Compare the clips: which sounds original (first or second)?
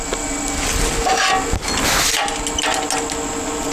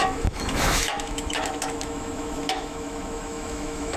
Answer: first